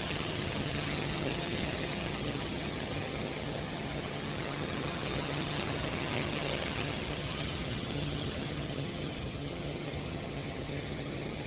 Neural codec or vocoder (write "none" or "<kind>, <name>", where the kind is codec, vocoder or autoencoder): vocoder, HiFi-GAN